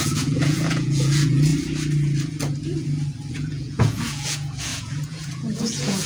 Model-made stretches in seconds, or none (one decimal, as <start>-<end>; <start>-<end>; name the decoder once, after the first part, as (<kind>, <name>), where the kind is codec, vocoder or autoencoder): 0.0-1.5 (vocoder, Vocos); 3.3-6.1